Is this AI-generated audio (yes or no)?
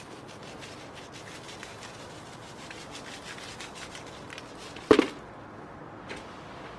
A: no